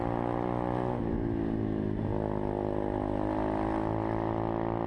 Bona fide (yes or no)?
yes